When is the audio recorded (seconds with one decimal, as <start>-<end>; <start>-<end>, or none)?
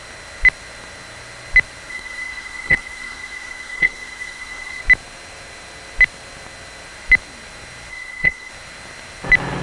0.0-1.9; 4.8-7.9; 8.5-9.6